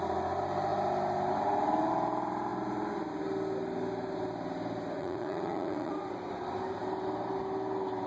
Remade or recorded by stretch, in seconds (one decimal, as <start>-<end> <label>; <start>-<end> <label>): 0.0-5.0 recorded; 5.0-5.9 remade; 5.9-8.1 recorded